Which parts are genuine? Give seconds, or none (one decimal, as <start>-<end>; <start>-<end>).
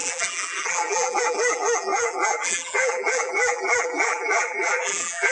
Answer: none